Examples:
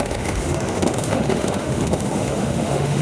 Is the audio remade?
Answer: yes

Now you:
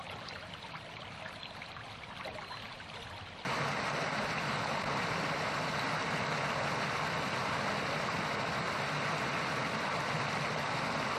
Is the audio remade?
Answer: no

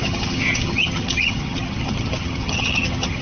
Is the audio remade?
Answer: yes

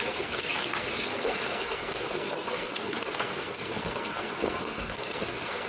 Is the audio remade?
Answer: yes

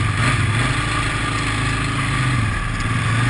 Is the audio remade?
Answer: no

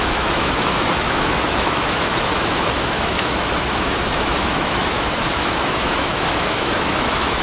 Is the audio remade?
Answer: yes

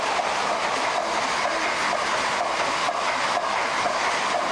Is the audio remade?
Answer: no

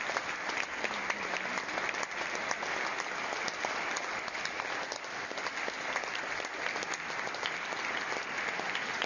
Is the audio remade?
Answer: no